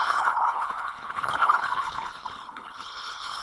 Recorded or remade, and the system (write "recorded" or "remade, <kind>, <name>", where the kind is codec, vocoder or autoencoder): remade, codec, HILCodec